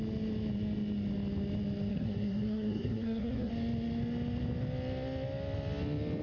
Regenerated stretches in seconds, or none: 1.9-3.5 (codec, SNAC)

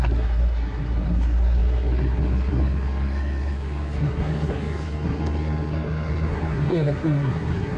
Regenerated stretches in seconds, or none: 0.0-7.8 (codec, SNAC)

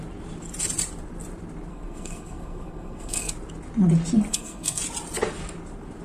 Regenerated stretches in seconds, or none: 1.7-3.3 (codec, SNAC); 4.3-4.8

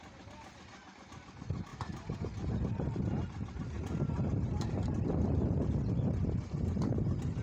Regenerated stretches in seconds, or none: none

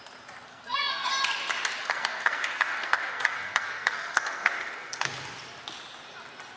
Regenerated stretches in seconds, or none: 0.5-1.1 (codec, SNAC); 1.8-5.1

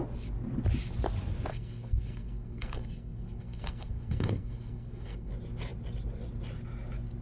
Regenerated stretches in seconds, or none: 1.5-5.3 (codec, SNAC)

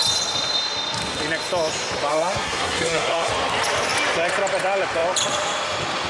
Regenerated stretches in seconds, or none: 2.1-3.3 (codec, SNAC)